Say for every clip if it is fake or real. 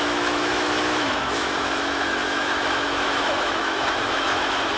fake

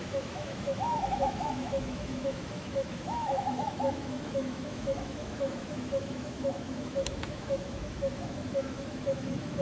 fake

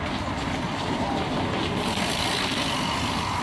real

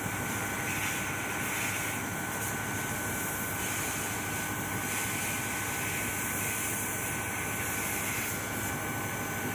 real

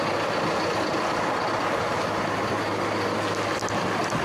real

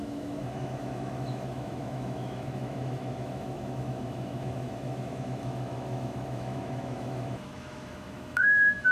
fake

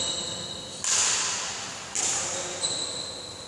real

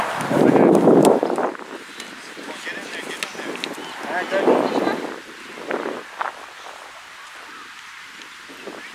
real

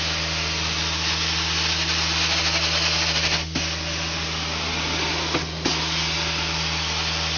real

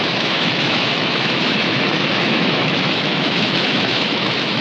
fake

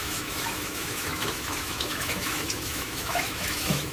fake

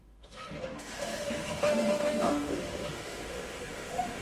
fake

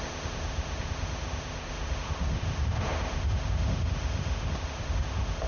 fake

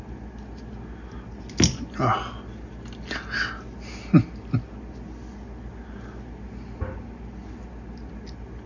real